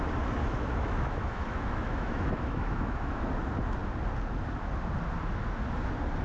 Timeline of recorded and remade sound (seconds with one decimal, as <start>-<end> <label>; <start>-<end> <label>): 0.0-0.4 recorded; 0.4-3.2 remade; 3.2-6.2 recorded